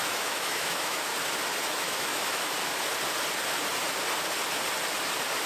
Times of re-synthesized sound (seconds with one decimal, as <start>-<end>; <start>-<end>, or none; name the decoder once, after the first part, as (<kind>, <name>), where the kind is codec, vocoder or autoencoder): 0.0-1.1 (autoencoder, DAC-VAE); 1.6-2.6